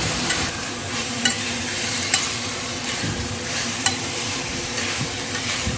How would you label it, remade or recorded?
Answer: remade